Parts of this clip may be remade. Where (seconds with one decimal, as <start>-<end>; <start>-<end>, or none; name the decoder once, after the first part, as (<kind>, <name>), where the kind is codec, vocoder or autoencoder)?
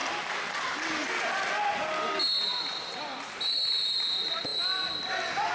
none